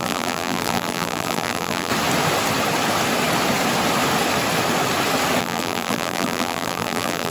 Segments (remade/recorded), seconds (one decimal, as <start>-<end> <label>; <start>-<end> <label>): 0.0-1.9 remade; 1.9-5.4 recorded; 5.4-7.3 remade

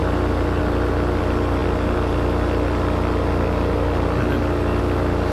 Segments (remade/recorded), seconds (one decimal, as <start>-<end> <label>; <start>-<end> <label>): 0.0-5.3 recorded

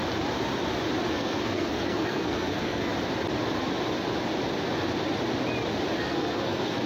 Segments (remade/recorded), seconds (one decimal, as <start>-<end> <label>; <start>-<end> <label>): 0.0-1.1 recorded; 1.1-2.9 remade; 2.9-6.0 recorded; 6.0-6.9 remade

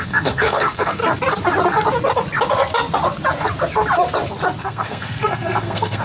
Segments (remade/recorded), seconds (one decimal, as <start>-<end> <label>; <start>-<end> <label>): 0.0-1.0 remade; 1.0-4.6 recorded; 4.6-6.0 remade